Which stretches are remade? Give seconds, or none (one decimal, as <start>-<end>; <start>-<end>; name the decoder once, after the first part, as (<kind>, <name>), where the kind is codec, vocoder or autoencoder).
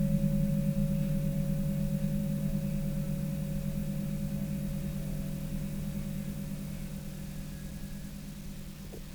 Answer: none